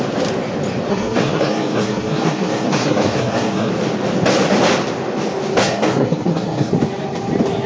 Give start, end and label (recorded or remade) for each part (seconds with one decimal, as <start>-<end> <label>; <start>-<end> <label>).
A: 0.0-0.9 recorded; 0.9-3.7 remade; 3.7-5.6 recorded; 5.6-6.7 remade; 6.7-7.7 recorded